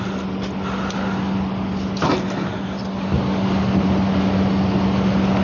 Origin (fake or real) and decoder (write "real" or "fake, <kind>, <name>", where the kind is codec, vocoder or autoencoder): real